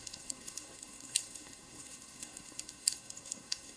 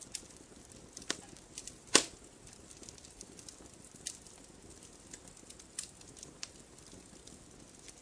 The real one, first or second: second